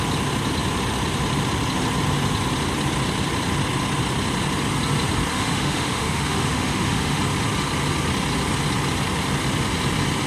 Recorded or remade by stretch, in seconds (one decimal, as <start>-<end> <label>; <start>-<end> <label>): 0.0-5.3 recorded; 5.3-7.2 remade; 7.2-10.3 recorded